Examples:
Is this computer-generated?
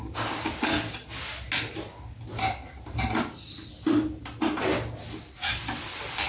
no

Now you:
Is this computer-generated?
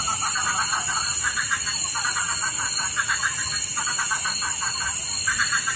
no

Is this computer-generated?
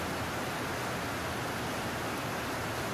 no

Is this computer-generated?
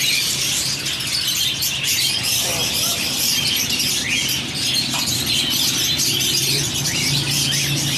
no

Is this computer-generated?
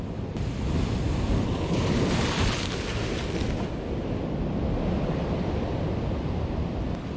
no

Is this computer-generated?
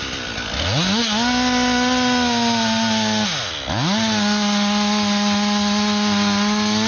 no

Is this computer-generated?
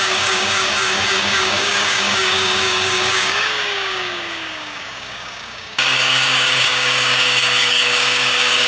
yes